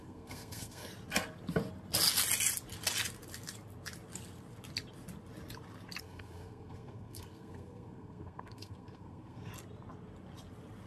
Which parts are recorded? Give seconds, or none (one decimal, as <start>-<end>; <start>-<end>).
0.9-6.0; 9.5-10.9

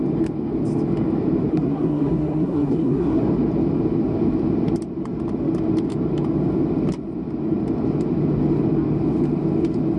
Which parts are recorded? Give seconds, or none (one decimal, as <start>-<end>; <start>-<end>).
0.0-1.5; 3.2-10.0

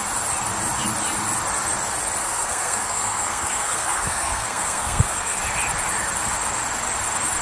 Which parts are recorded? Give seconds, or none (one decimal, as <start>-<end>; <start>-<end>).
0.0-2.2; 5.4-7.4

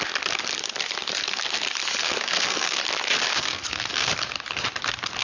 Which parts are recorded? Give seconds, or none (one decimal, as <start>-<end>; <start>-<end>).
0.0-2.0; 2.8-3.3; 4.1-5.2

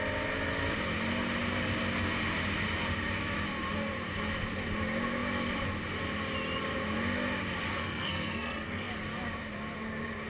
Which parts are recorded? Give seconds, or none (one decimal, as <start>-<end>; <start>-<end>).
0.0-7.7; 8.9-10.3